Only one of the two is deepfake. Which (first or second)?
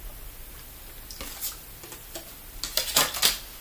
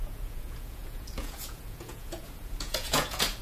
second